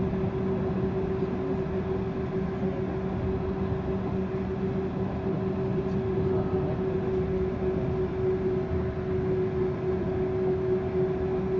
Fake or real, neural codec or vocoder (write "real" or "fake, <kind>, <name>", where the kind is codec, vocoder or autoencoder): real